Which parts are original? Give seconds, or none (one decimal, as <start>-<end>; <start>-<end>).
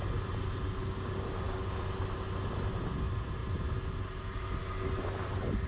0.0-0.8; 1.6-5.7